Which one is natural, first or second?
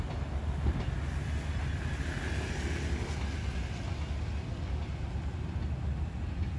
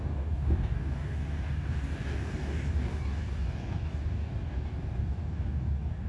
first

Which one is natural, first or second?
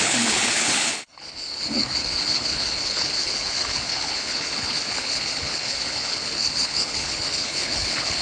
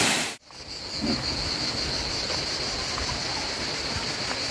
second